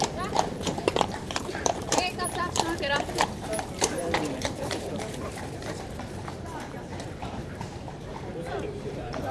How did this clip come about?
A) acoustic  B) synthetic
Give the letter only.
B